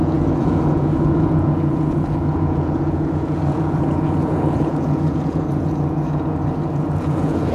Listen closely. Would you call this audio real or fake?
fake